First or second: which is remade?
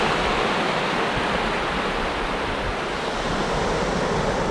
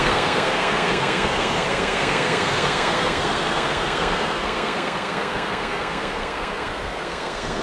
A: second